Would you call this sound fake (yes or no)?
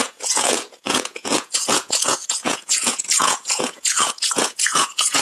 yes